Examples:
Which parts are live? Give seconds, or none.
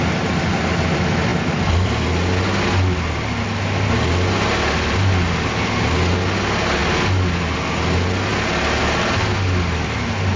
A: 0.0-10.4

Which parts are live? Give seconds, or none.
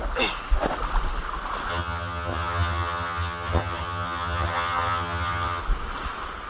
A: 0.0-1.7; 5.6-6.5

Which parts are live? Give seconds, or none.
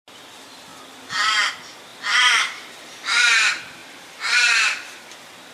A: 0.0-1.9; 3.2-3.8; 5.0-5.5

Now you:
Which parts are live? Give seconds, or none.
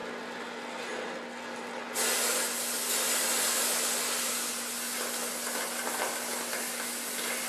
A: 0.0-7.5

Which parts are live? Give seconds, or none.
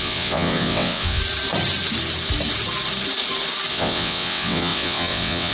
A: 1.2-3.7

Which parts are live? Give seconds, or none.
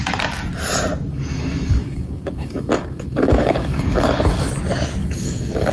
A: 0.0-1.1; 4.5-5.0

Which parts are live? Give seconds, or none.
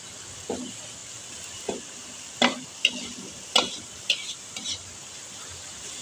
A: 0.0-6.0